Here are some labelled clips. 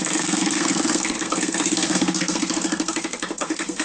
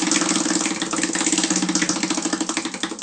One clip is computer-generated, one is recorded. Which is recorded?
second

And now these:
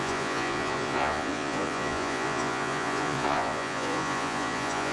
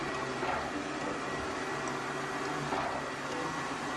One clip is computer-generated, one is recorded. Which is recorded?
second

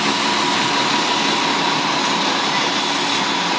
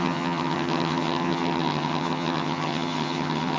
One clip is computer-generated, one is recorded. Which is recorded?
first